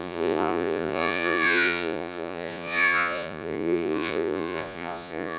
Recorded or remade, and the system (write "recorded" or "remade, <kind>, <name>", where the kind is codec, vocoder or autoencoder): remade, vocoder, Vocos